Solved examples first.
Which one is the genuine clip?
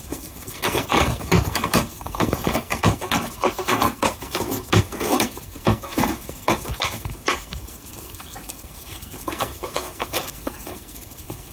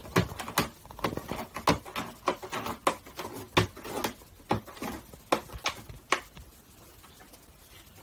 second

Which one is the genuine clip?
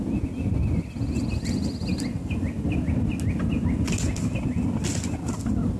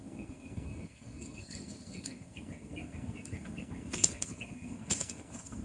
first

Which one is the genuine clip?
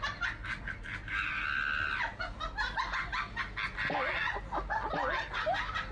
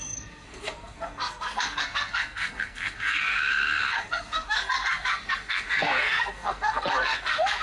first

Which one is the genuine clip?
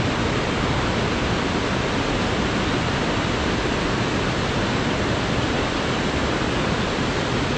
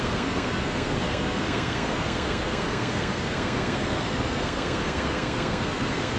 first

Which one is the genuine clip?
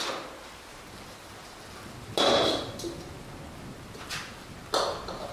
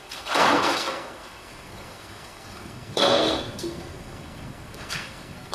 first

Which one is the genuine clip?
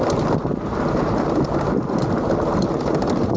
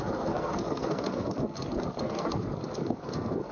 first